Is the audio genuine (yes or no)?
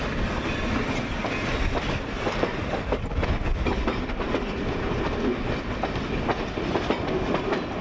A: yes